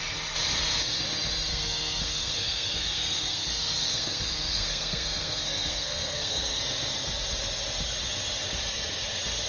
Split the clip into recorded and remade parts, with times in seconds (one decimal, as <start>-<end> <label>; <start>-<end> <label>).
0.0-1.5 recorded; 1.5-6.6 remade; 6.6-9.5 recorded